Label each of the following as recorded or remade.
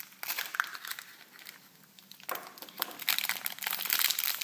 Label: recorded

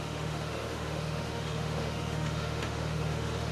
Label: remade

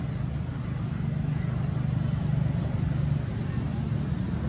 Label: recorded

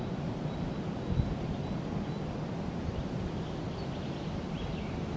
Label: recorded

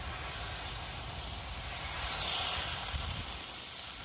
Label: recorded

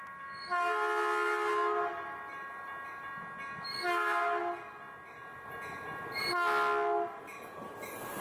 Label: recorded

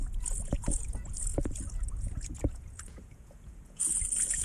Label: remade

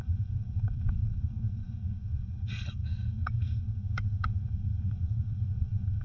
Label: remade